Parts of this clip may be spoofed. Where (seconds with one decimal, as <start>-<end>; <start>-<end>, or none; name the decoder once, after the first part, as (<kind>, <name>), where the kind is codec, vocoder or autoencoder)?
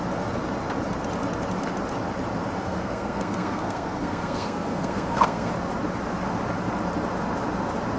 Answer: 2.6-5.5 (codec, SNAC)